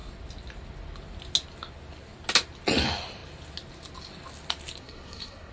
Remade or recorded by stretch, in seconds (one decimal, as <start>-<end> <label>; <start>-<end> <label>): 0.0-4.8 recorded; 4.8-5.5 remade